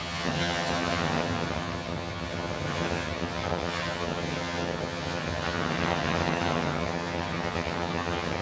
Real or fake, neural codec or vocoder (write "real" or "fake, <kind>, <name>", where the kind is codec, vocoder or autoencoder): fake, vocoder, HiFi-GAN